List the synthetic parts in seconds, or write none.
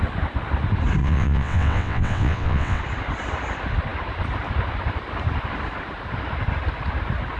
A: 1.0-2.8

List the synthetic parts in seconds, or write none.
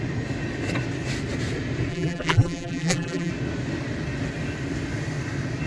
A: 1.9-3.3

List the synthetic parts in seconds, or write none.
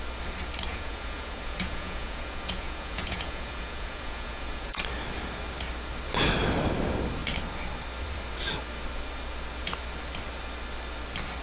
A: 0.7-4.8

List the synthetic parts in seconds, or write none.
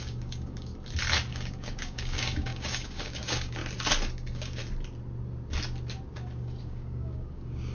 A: 0.0-0.7; 1.3-3.6; 4.1-4.6; 6.6-7.7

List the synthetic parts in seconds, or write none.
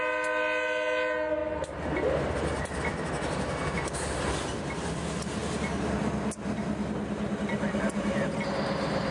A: none